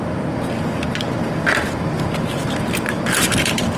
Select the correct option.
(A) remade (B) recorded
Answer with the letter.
B